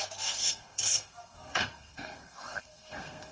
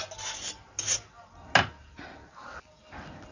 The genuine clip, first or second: second